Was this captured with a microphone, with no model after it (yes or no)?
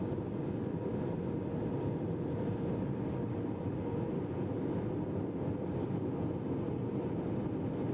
yes